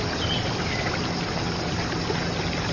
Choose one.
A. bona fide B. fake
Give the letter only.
A